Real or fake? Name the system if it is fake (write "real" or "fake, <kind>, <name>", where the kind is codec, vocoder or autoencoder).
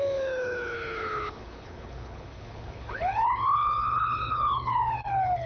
fake, codec, HILCodec